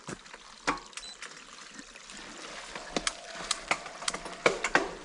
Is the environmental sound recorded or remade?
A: recorded